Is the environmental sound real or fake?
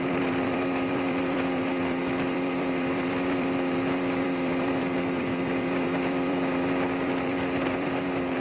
fake